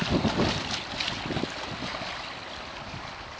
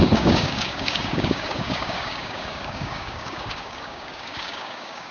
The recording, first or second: first